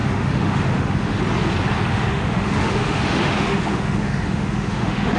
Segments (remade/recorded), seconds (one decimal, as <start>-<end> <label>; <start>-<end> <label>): 0.0-1.2 remade; 1.2-1.9 recorded; 1.9-5.2 remade